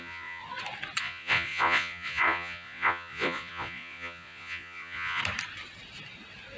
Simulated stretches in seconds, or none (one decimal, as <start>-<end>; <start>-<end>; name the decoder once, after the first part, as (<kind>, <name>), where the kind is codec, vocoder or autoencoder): 0.0-0.4 (vocoder, Vocos); 1.0-5.2